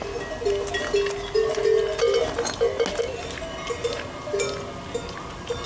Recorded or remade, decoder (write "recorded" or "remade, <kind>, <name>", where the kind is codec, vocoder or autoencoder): recorded